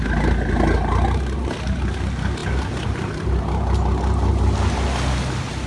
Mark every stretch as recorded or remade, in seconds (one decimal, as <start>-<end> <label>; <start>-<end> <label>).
0.0-5.7 recorded